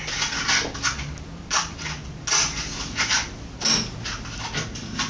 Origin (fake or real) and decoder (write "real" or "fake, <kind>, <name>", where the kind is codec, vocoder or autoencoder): real